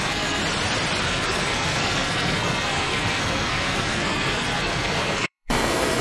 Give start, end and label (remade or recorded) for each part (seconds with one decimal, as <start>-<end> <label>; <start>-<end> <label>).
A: 0.0-0.4 remade; 0.4-1.0 recorded; 1.0-6.0 remade